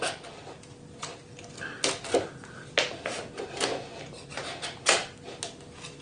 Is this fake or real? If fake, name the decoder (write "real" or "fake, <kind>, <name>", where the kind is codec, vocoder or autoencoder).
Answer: real